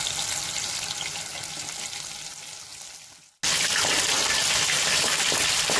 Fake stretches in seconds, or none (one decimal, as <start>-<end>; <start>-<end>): none